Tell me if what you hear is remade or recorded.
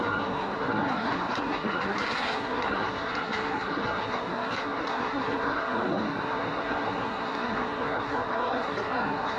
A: remade